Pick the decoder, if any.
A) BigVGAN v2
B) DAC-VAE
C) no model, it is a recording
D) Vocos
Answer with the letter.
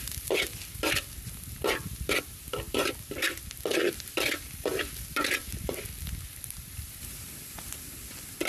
A